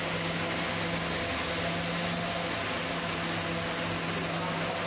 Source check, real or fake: real